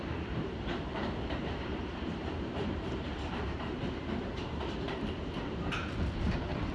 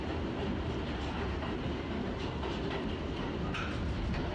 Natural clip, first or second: second